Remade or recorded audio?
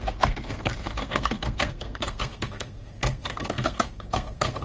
remade